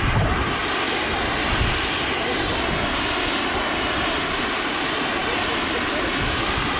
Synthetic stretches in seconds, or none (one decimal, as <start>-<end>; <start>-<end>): none